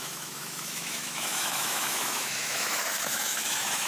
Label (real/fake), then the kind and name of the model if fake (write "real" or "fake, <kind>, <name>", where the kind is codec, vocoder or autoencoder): fake, autoencoder, DAC-VAE